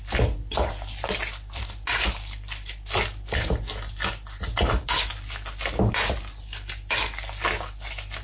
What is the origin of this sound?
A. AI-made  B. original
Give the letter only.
B